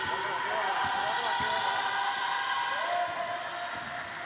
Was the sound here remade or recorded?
recorded